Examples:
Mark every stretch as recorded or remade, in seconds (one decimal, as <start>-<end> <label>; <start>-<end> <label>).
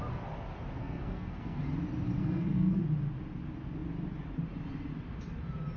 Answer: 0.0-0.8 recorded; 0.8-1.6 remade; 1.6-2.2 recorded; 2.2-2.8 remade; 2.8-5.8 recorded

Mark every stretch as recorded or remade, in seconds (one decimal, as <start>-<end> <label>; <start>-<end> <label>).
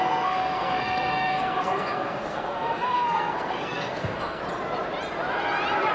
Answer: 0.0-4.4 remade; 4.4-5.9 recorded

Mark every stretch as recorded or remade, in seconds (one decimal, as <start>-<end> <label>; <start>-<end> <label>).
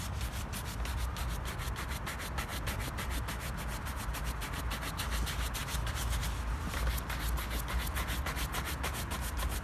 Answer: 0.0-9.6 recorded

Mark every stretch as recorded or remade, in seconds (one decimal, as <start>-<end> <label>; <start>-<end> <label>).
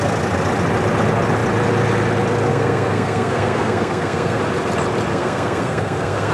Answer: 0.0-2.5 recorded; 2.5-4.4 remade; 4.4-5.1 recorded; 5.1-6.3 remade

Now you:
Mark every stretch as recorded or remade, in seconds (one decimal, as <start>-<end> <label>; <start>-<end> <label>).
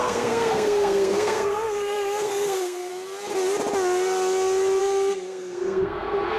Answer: 0.0-2.9 remade; 2.9-4.8 recorded; 4.8-6.4 remade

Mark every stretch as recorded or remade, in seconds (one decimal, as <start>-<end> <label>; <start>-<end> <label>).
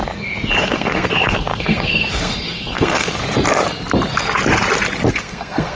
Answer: 0.0-0.6 recorded; 0.6-3.2 remade; 3.2-5.1 recorded; 5.1-5.7 remade